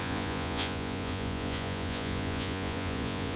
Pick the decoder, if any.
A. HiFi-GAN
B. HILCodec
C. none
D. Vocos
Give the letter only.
D